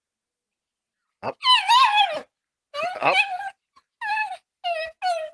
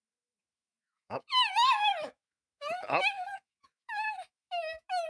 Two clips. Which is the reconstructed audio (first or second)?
second